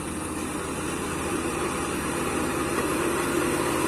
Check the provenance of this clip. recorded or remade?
remade